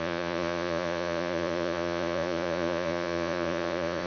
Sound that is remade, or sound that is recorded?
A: remade